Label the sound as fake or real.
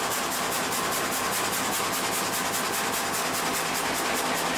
real